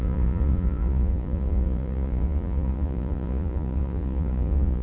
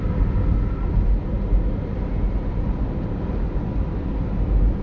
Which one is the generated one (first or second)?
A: first